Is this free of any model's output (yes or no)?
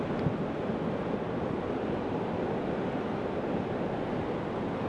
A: yes